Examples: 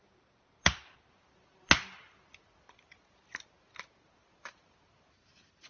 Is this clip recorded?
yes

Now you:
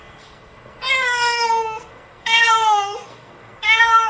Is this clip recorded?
no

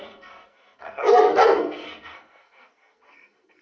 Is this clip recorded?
no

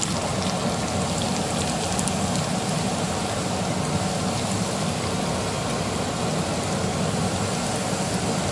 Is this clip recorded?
yes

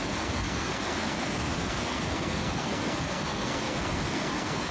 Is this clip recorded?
no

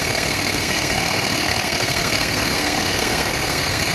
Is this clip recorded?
no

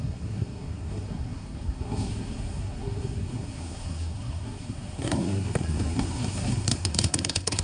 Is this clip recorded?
no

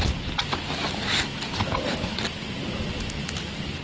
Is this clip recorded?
yes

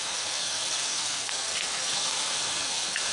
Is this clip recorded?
no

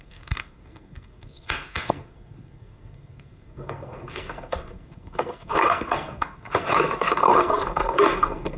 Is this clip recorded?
no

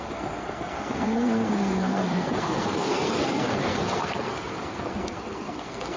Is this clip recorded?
no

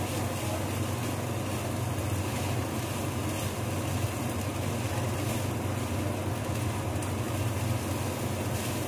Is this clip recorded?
yes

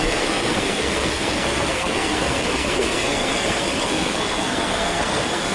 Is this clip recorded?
no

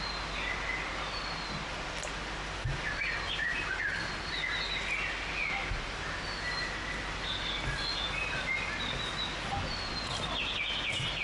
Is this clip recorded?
yes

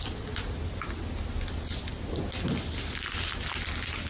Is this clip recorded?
yes